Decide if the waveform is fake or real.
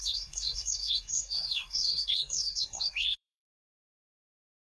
fake